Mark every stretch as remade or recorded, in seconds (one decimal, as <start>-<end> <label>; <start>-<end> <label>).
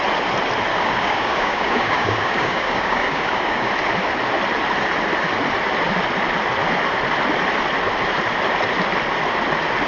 0.0-0.7 recorded; 0.7-3.7 remade; 3.7-9.9 recorded